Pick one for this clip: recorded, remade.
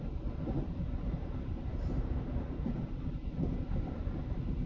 recorded